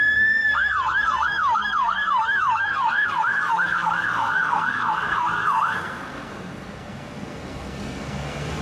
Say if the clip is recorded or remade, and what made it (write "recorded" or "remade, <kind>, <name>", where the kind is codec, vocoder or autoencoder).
remade, codec, SNAC